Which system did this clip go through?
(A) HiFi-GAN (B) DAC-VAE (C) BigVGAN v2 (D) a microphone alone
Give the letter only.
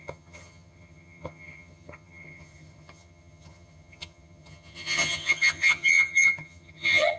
A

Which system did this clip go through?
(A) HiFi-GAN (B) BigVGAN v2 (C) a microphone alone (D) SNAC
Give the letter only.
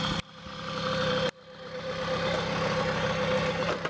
C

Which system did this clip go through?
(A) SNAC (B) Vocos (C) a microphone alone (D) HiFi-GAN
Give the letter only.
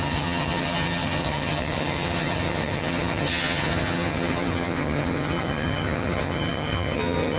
D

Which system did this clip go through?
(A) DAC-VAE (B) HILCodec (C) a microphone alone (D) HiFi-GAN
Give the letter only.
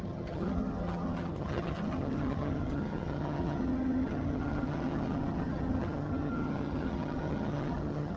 D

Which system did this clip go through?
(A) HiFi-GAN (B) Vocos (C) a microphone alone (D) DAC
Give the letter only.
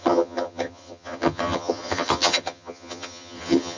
A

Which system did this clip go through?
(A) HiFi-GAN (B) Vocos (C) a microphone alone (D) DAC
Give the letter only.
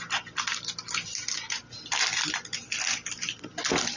C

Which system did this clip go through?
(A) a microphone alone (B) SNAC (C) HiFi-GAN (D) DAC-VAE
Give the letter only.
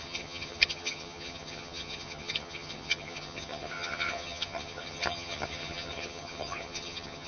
C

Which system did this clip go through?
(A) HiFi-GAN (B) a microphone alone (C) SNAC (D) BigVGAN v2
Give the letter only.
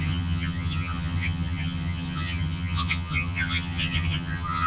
A